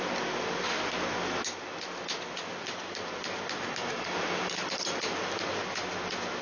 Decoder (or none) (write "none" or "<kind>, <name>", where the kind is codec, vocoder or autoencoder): none